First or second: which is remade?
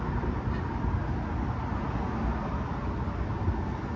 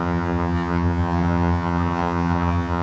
second